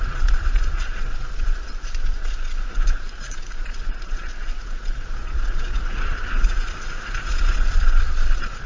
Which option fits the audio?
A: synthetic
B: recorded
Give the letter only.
A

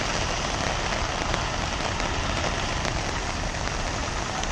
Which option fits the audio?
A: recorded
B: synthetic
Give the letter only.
A